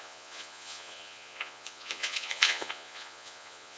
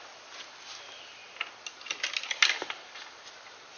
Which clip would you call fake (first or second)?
first